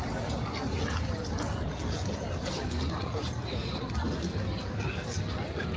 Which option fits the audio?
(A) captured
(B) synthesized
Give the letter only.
A